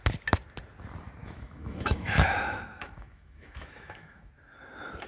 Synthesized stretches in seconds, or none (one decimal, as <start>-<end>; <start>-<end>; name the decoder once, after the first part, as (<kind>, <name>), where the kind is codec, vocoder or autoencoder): 1.2-4.3 (autoencoder, DAC-VAE)